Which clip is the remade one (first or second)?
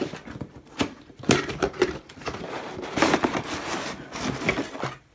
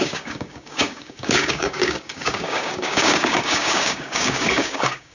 second